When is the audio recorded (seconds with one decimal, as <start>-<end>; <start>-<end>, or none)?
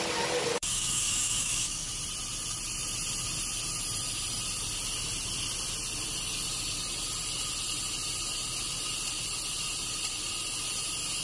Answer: 0.0-0.5; 1.9-11.2